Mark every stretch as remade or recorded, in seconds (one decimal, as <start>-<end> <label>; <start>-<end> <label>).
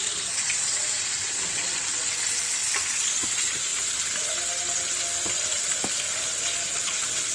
0.0-1.6 remade; 1.6-2.9 recorded; 2.9-3.7 remade; 3.7-6.8 recorded; 6.8-7.3 remade